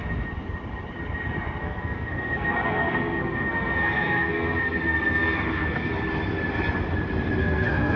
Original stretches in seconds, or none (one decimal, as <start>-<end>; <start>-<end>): 0.0-1.6; 5.9-7.4